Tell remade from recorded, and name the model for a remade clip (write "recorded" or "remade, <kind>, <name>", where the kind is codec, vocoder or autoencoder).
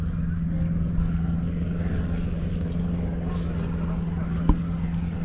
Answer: recorded